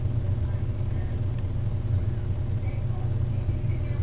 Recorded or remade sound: recorded